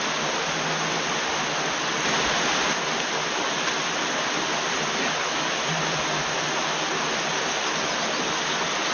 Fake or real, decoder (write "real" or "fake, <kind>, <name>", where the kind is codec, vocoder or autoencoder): real